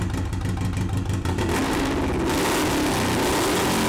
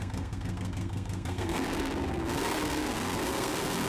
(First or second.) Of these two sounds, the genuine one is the first